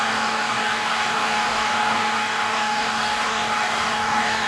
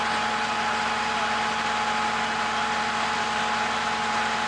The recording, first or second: second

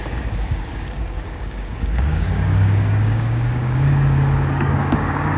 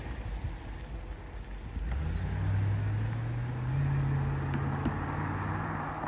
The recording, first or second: second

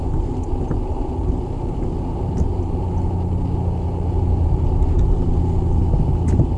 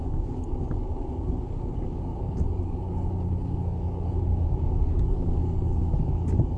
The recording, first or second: first